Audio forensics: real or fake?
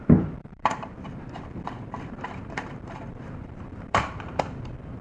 fake